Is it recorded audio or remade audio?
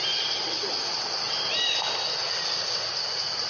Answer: recorded